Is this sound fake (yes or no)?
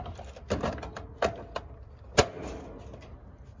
no